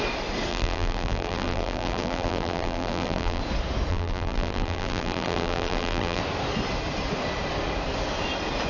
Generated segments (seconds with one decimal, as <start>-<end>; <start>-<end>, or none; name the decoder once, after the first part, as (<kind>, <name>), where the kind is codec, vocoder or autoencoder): 0.5-3.4 (vocoder, BigVGAN v2); 3.9-6.2